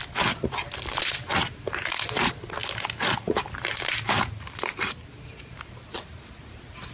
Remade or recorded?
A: recorded